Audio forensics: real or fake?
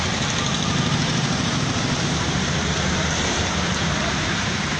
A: fake